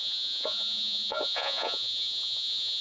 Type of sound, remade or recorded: remade